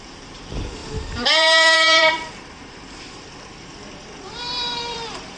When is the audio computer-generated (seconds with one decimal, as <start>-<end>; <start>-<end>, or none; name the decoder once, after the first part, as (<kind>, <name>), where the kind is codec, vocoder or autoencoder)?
0.0-5.4 (vocoder, BigVGAN v2)